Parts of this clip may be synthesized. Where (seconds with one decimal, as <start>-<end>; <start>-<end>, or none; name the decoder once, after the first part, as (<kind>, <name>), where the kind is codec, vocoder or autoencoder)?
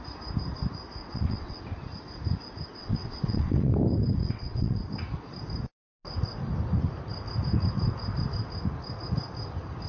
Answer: 1.0-1.6 (vocoder, WaveNeXt); 2.8-3.7; 4.2-4.8